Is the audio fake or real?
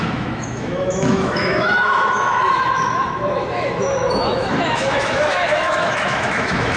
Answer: fake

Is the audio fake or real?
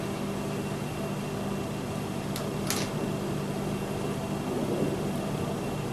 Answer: real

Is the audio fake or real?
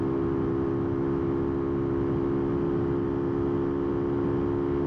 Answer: real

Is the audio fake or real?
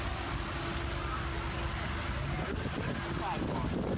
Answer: real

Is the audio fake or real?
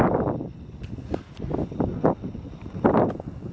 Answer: real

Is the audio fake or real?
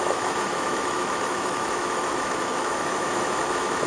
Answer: fake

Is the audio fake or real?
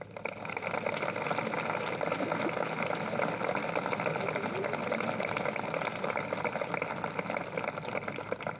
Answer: real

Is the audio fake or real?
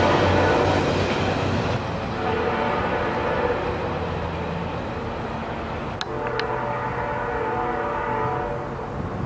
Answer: real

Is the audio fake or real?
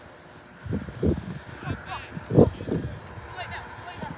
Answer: real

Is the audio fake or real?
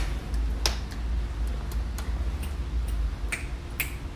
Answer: real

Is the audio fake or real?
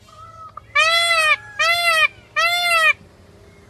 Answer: real